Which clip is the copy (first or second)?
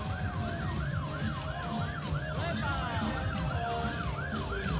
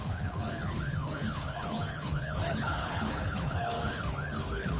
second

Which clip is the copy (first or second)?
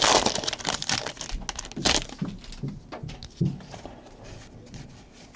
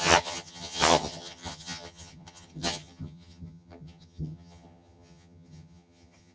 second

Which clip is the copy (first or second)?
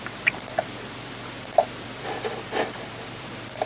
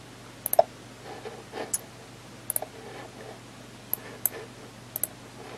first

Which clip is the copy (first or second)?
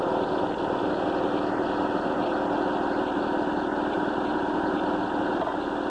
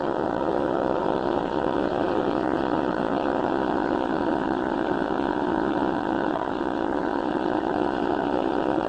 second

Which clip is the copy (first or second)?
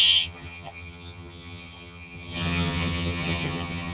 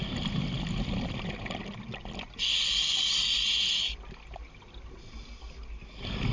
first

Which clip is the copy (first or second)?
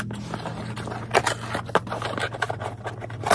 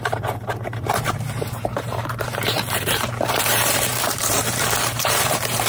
second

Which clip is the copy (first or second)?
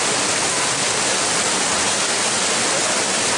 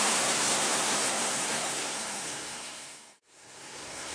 second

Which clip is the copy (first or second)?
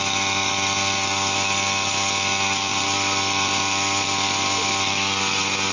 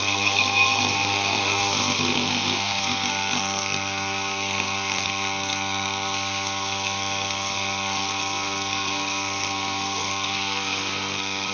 second